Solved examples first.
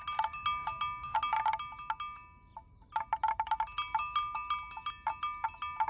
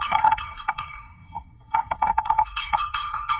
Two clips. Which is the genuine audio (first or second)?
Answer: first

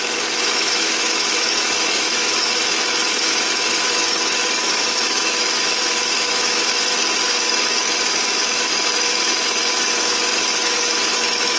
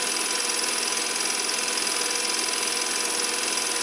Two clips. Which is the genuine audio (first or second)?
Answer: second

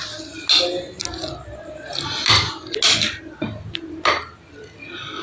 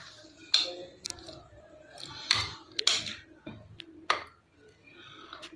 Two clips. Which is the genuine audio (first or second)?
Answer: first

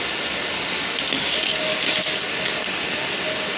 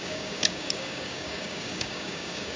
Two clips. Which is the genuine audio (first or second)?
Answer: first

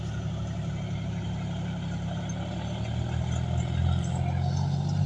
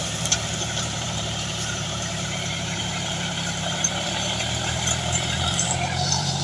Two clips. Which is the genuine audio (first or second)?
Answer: first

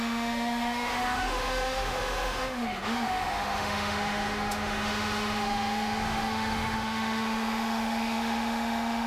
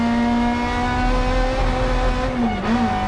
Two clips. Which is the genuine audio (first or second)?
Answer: second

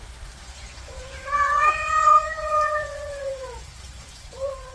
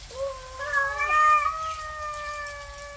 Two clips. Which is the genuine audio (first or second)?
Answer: second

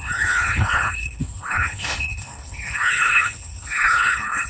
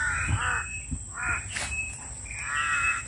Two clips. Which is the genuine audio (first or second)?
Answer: second